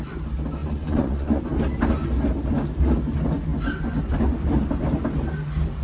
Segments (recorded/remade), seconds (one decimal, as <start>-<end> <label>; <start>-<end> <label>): 0.0-0.6 recorded; 0.6-1.4 remade; 1.4-5.8 recorded